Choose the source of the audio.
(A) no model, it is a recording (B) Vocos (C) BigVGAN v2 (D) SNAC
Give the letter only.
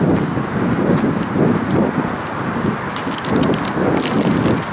A